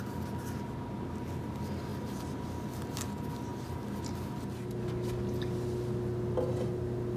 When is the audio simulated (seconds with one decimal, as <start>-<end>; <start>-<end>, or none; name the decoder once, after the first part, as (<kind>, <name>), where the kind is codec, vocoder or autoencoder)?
none